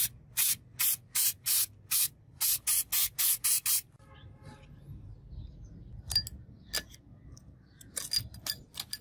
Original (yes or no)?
yes